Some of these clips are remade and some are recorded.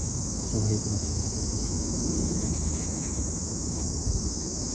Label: remade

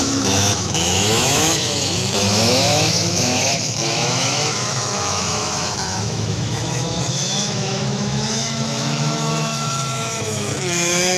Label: remade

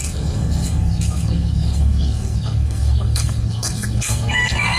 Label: remade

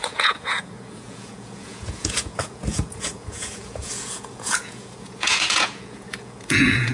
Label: remade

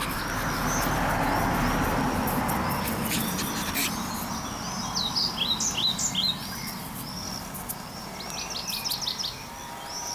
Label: recorded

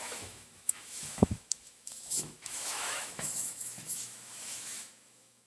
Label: remade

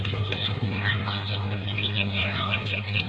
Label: remade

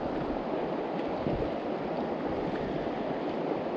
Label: recorded